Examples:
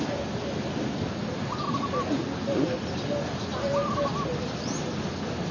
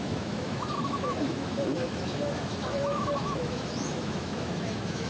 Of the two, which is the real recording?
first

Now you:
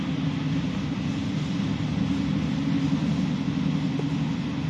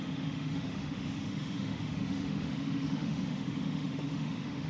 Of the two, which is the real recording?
first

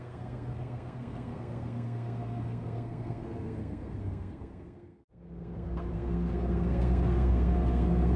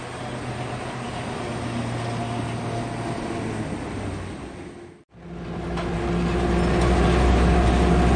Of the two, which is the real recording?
second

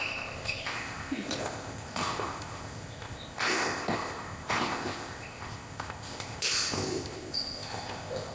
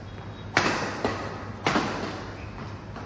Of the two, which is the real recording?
second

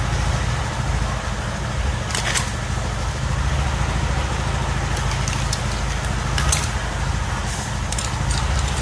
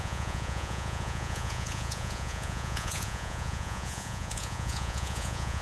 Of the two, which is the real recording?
first